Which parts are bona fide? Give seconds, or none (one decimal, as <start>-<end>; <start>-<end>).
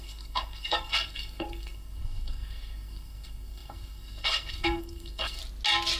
5.4-6.0